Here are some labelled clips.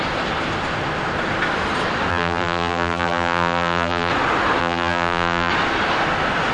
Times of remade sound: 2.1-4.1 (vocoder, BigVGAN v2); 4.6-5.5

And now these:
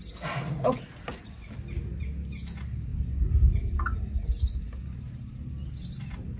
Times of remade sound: none

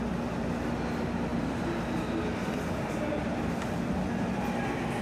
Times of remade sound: none

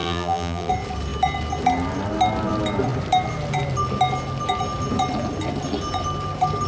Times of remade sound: 0.0-0.7 (vocoder, BigVGAN v2)

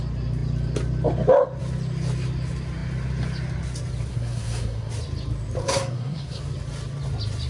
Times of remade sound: 4.1-4.9 (codec, SNAC); 5.6-6.4

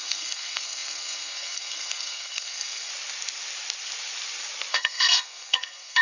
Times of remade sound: 0.0-2.9 (codec, SNAC); 4.7-6.0